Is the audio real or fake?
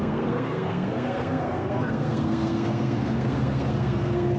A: fake